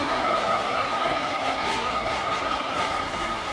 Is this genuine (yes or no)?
no